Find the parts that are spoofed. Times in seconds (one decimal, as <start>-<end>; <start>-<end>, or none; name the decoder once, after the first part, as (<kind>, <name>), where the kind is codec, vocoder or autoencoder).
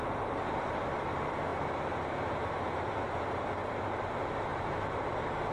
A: 0.0-1.5 (vocoder, BigVGAN v2); 3.7-5.5